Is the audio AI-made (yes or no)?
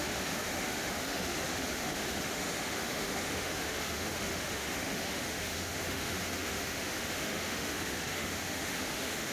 yes